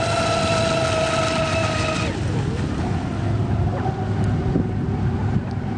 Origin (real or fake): real